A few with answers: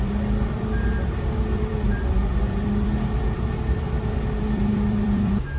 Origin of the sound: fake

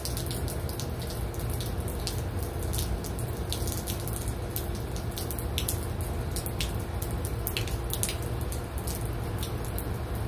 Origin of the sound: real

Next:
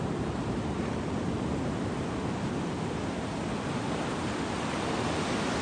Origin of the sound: real